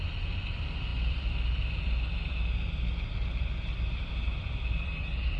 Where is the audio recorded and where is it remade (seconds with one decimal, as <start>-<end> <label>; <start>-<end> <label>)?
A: 0.0-5.4 remade